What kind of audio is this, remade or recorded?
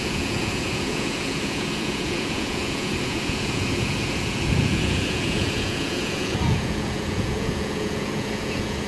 remade